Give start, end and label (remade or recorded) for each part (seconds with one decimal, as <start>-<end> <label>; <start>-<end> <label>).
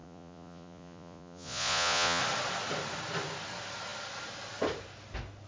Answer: 0.0-2.2 remade; 2.2-5.5 recorded